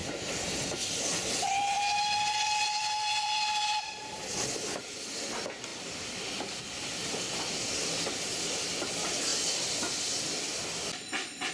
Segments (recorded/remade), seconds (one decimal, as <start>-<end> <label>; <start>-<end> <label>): 0.0-0.5 remade; 0.5-1.1 recorded; 1.1-4.2 remade; 4.2-11.5 recorded